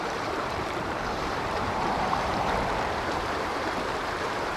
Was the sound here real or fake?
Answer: fake